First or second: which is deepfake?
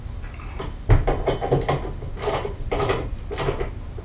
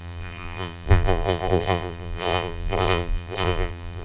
second